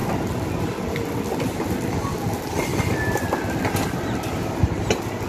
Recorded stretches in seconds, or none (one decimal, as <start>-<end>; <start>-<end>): 0.0-5.3